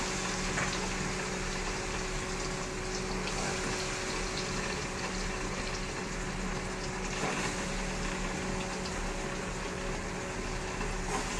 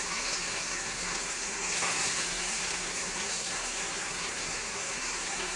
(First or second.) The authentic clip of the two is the first